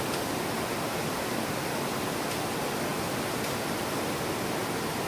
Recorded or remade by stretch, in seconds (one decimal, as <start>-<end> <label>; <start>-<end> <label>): 0.0-5.1 recorded